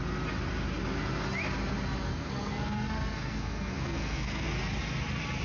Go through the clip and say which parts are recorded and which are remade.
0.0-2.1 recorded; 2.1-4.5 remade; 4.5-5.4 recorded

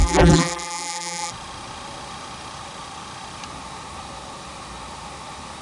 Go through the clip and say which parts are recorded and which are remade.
0.0-1.3 remade; 1.3-5.6 recorded

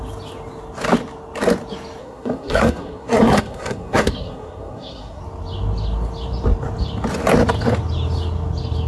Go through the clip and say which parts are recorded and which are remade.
0.0-2.0 recorded; 2.0-5.2 remade; 5.2-8.9 recorded

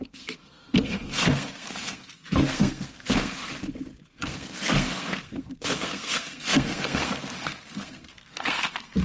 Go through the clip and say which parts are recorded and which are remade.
0.0-3.4 remade; 3.4-4.1 recorded; 4.1-9.0 remade

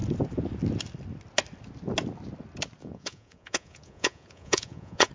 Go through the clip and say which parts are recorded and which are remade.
0.0-2.8 recorded; 2.8-5.1 remade

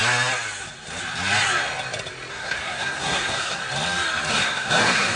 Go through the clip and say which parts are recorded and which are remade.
0.0-2.3 recorded; 2.3-3.6 remade; 3.6-4.3 recorded; 4.3-5.2 remade

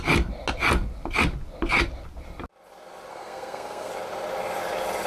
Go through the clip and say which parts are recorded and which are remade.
0.0-3.1 recorded; 3.1-3.9 remade; 3.9-5.1 recorded

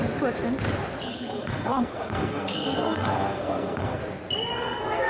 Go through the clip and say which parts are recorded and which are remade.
0.0-1.0 recorded; 1.0-4.0 remade; 4.0-4.5 recorded; 4.5-5.1 remade